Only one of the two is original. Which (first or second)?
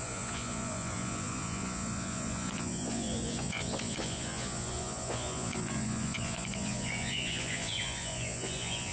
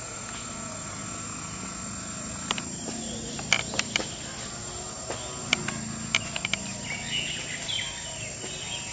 second